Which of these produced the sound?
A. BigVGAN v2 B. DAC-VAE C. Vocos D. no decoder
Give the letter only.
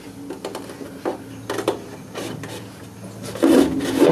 D